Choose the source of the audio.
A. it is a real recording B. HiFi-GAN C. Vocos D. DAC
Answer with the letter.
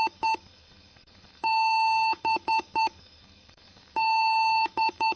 D